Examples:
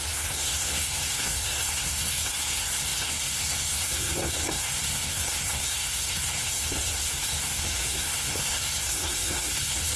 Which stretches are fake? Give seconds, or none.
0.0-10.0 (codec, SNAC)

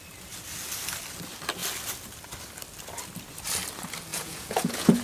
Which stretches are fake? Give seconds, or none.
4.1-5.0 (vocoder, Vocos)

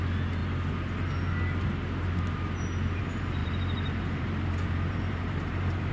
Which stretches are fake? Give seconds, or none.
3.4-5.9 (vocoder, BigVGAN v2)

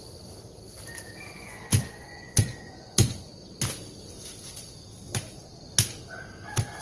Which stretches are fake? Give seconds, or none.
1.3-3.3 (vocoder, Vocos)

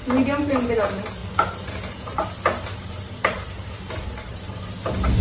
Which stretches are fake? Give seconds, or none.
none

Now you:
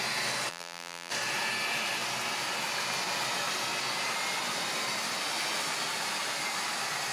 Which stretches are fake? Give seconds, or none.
0.5-1.1 (vocoder, BigVGAN v2)

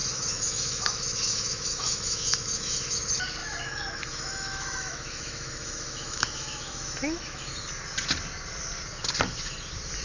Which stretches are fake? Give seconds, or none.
0.0-3.0 (autoencoder, DAC-VAE); 3.4-7.5

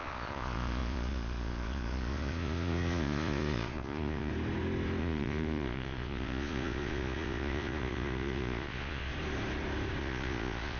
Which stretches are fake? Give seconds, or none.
0.0-4.3 (vocoder, Vocos); 5.0-9.1; 10.0-10.8